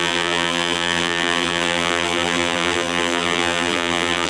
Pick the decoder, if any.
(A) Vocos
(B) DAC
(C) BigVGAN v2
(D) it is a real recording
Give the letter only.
C